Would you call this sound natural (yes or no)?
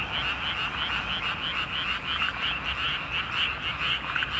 yes